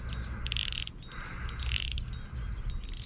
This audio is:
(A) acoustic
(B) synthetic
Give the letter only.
A